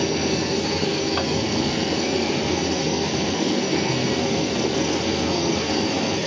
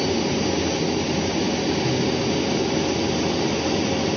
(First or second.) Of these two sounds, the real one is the second